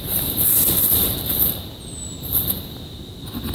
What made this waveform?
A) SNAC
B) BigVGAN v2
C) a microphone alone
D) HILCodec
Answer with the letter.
C